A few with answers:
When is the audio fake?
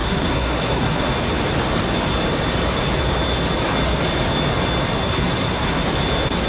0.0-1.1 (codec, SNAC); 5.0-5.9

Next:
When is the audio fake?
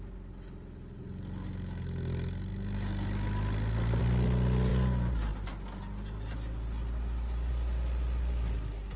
none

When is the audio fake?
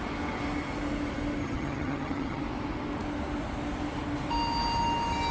1.4-2.4 (vocoder, HiFi-GAN)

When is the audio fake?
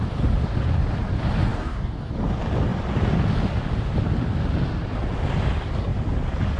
1.5-2.1 (codec, DAC)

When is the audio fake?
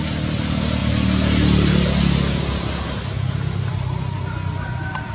none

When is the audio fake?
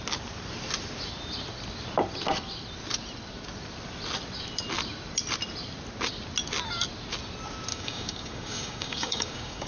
7.7-9.7 (codec, DAC)